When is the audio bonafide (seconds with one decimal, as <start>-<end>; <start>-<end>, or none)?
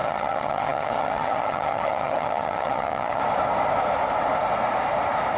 3.2-5.4